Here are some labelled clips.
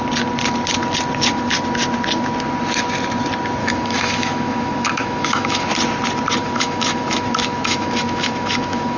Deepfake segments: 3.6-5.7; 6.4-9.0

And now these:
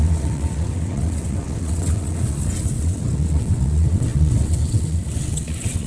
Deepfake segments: 0.0-5.9

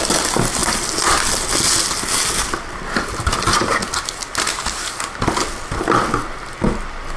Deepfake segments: none

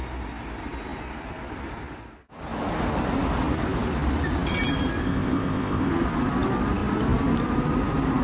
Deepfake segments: 5.0-5.9

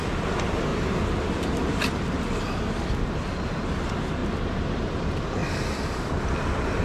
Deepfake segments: 0.7-2.6; 5.4-6.8